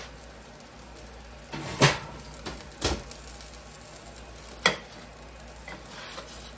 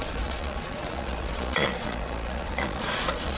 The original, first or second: first